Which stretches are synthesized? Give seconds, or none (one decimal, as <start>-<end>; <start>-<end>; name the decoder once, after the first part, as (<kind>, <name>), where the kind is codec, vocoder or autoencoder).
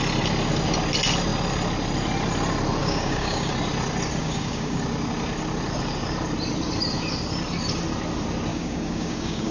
2.8-3.5 (codec, DAC); 4.2-4.8; 8.5-9.5